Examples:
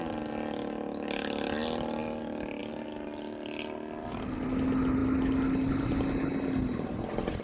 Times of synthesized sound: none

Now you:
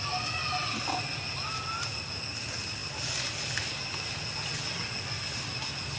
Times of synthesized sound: none

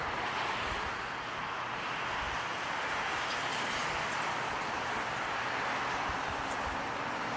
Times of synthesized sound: none

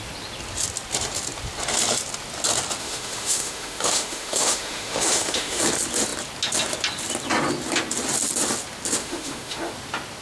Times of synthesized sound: 2.8-5.6 (autoencoder, DAC-VAE); 9.0-9.7

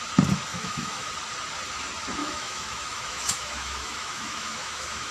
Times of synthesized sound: 0.5-1.1 (autoencoder, DAC-VAE); 2.2-5.1

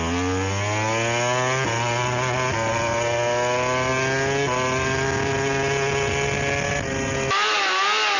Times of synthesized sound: none

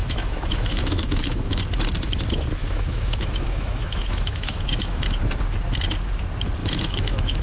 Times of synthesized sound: 0.0-1.6 (autoencoder, DAC-VAE); 2.6-5.0; 6.6-7.4